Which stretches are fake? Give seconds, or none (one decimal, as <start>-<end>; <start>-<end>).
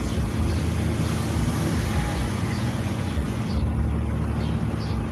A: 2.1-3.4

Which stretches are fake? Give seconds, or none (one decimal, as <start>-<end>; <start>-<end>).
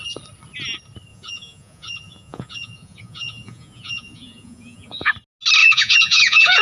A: 1.1-5.1; 5.6-6.6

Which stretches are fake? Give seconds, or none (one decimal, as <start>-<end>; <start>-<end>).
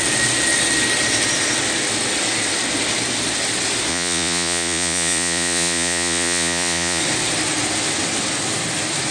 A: 3.9-7.0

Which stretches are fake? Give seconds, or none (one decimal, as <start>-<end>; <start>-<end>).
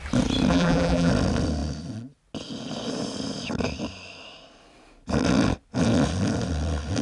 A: 0.5-1.1